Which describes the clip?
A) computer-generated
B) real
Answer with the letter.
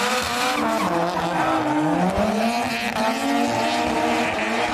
B